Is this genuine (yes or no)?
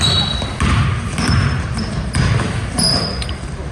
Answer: no